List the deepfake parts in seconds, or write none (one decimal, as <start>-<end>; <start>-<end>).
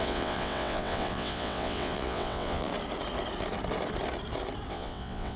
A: 0.0-2.7; 4.7-5.4